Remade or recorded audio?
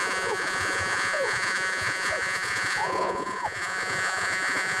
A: remade